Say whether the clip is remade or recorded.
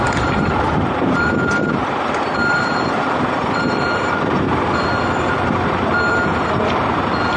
remade